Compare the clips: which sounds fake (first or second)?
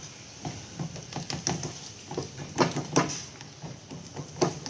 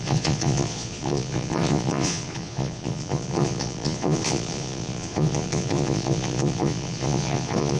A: second